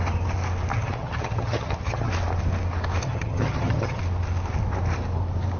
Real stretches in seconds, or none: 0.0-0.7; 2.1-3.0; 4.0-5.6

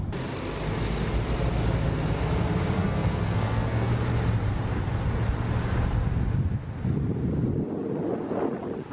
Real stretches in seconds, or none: 0.0-2.8; 3.9-8.9

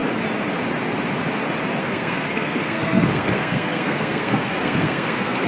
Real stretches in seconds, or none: 0.0-1.8